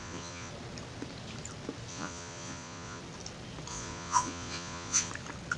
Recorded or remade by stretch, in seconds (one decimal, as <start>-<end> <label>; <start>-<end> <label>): 0.0-0.5 remade; 0.5-1.9 recorded; 1.9-3.0 remade; 3.0-3.7 recorded; 3.7-5.1 remade; 5.1-5.6 recorded